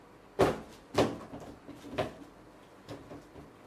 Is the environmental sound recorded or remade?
recorded